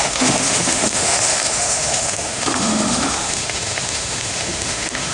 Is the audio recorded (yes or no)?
no